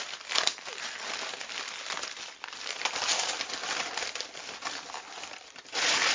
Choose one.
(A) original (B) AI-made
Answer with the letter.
A